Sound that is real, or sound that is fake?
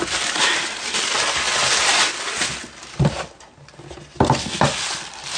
real